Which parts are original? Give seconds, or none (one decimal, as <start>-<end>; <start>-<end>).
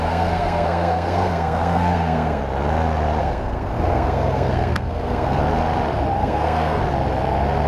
2.4-3.2; 5.4-6.2; 6.8-7.7